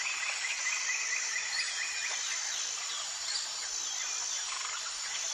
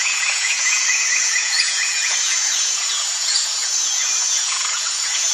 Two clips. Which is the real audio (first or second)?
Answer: first